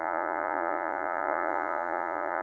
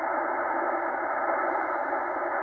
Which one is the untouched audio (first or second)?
second